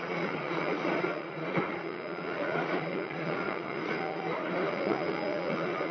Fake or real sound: fake